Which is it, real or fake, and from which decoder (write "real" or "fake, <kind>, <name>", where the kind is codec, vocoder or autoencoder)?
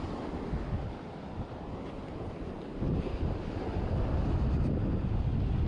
real